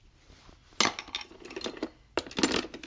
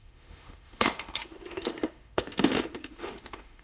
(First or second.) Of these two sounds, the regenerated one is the second